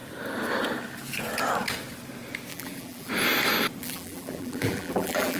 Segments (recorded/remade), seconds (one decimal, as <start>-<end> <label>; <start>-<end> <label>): 0.0-2.5 recorded; 2.5-3.1 remade; 3.1-3.8 recorded; 3.8-5.4 remade